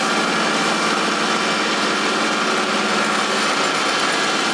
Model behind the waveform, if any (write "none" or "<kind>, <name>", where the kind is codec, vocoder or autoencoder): none